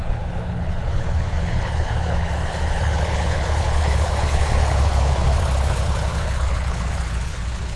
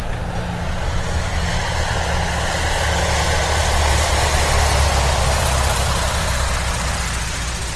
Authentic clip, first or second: second